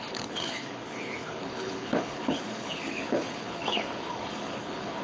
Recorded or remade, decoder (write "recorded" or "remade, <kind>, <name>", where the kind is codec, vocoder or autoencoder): remade, codec, HILCodec